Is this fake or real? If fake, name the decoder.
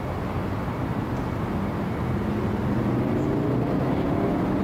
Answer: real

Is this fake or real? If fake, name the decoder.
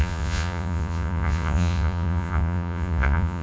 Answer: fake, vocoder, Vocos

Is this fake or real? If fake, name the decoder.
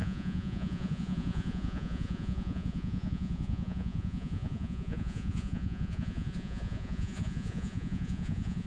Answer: fake, vocoder, Vocos